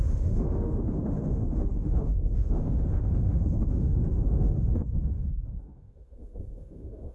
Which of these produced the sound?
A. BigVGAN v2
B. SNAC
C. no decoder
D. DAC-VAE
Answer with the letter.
D